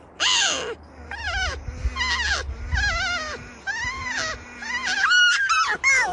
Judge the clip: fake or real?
real